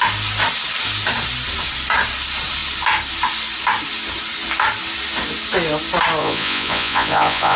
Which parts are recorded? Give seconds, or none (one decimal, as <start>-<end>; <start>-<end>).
0.0-6.2